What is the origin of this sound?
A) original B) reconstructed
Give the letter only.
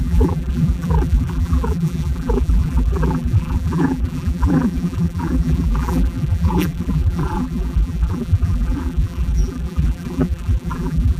B